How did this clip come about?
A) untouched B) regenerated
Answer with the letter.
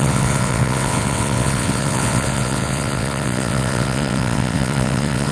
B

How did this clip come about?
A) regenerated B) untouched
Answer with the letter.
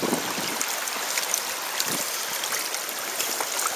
B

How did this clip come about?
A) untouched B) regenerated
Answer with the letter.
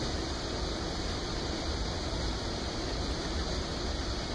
A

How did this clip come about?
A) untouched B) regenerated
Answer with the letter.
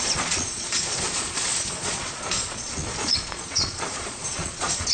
B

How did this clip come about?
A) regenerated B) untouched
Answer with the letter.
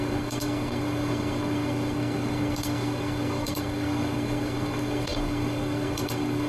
A